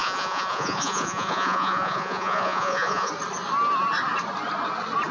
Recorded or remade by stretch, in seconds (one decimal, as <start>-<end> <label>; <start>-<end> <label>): 0.0-3.1 remade; 3.1-5.1 recorded